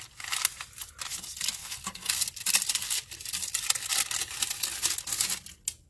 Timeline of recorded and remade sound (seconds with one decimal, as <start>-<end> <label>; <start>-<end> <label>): 0.0-1.6 recorded; 1.6-2.2 remade; 2.2-5.9 recorded